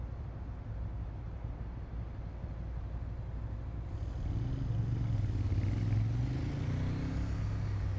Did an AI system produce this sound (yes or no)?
no